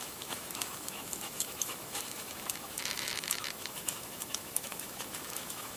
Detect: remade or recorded remade